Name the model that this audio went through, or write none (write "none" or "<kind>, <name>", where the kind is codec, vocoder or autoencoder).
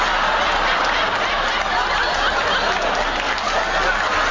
none